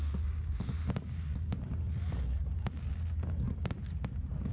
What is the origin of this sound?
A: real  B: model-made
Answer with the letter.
A